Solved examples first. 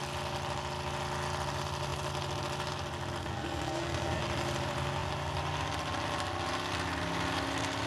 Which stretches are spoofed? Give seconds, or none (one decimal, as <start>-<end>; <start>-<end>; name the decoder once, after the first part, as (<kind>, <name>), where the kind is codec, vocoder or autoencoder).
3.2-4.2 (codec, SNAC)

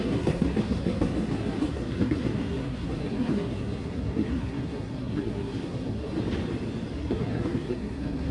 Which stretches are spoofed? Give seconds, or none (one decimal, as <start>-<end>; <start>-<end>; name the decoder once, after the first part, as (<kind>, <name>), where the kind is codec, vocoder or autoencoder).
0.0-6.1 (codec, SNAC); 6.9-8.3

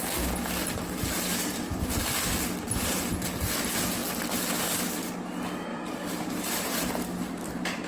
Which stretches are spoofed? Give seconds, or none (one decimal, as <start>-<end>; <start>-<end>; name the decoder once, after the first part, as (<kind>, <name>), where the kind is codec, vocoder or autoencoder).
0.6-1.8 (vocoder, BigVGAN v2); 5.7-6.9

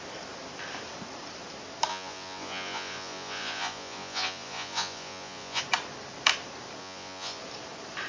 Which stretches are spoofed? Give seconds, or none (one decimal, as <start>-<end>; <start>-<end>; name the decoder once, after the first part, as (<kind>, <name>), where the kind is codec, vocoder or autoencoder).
1.9-5.6 (vocoder, Vocos); 6.8-7.4

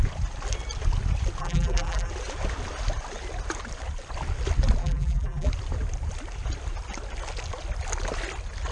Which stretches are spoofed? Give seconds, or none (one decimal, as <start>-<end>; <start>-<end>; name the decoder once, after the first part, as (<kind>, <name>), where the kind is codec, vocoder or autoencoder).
1.4-2.1 (vocoder, BigVGAN v2); 4.8-5.5

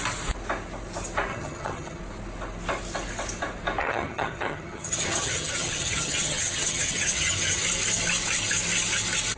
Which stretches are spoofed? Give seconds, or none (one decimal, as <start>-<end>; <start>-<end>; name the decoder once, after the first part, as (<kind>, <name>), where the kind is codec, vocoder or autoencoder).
1.3-2.0 (vocoder, HiFi-GAN); 3.8-7.6